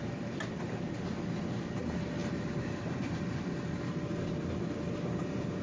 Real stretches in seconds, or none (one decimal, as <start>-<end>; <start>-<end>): 0.0-2.2; 3.2-5.6